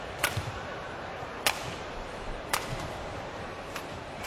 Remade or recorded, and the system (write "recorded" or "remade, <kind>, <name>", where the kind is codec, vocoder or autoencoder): remade, vocoder, BigVGAN v2